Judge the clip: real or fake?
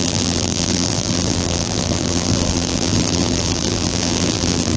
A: fake